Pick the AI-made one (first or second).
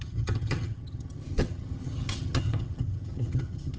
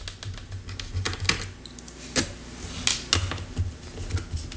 first